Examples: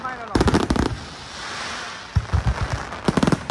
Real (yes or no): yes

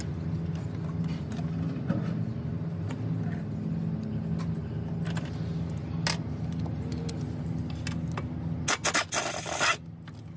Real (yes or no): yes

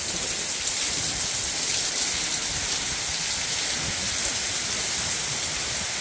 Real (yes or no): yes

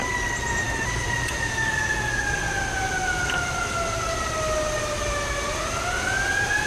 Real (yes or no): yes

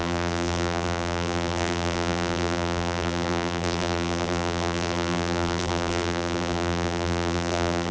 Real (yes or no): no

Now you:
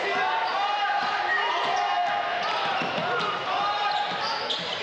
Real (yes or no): yes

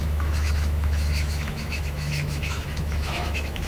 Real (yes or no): no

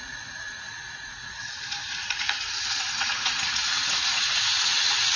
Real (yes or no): no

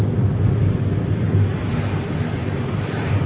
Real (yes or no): yes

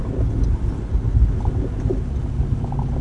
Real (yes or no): yes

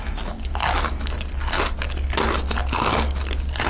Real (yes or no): yes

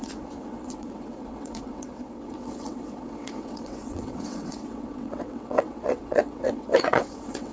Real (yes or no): no